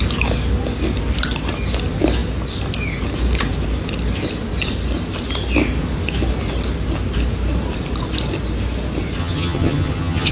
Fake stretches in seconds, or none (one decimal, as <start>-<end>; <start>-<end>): 9.2-10.3